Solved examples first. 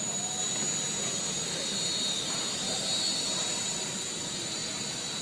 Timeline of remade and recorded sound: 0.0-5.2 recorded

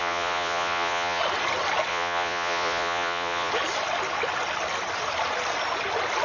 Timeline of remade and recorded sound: 0.0-1.2 remade; 1.2-1.9 recorded; 1.9-3.5 remade; 3.5-6.2 recorded

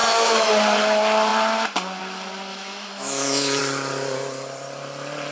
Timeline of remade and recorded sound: 0.0-0.5 remade; 0.5-2.5 recorded; 2.5-3.6 remade; 3.6-5.3 recorded

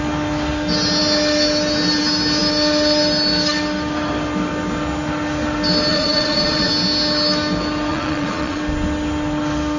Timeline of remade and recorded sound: 0.0-5.9 recorded; 5.9-6.7 remade; 6.7-7.9 recorded; 7.9-8.6 remade; 8.6-9.8 recorded